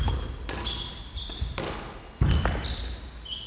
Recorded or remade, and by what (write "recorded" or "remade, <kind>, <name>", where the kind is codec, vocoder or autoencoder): recorded